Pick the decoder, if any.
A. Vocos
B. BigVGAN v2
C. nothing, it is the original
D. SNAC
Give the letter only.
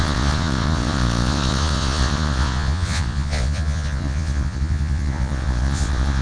A